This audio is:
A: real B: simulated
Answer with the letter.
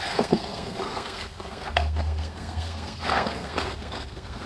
B